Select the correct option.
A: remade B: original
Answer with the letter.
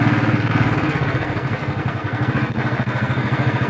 A